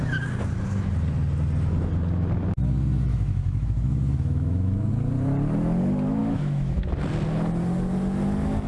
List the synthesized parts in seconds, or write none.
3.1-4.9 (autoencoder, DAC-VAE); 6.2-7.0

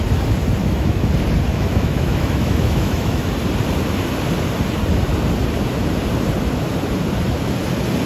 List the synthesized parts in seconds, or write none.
0.6-1.1 (autoencoder, DAC-VAE); 1.5-3.3

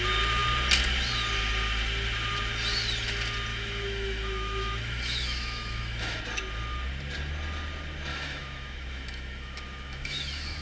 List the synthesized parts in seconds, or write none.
3.5-6.2 (autoencoder, DAC-VAE); 8.1-10.6

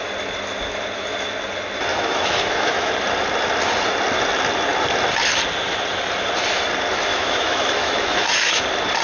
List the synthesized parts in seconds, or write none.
1.9-2.9 (autoencoder, DAC-VAE); 7.1-8.6

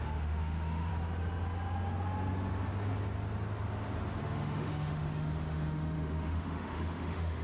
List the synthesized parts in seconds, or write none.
0.0-0.9 (autoencoder, DAC-VAE); 4.2-7.4